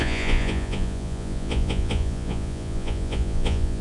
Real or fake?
fake